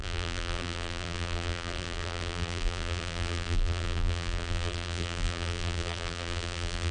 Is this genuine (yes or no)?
no